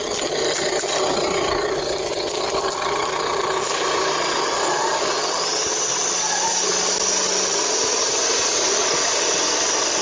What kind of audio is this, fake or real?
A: real